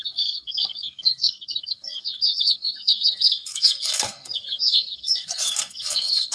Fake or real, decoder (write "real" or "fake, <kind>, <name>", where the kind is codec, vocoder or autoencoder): fake, codec, SNAC